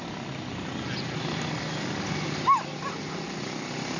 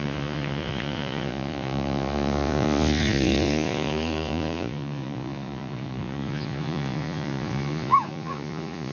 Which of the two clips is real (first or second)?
first